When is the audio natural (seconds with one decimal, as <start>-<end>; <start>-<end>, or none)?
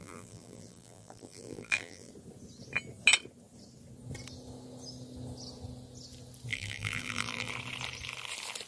2.1-6.5; 7.5-8.7